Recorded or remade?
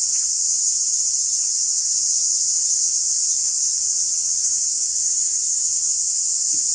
remade